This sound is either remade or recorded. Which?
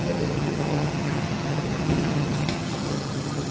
remade